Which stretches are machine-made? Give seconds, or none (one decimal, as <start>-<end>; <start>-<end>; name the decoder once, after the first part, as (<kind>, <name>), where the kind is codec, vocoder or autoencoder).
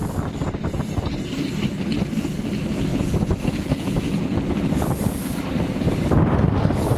2.9-4.8 (vocoder, Vocos)